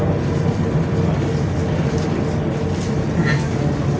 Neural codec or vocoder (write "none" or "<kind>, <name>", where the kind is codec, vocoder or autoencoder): none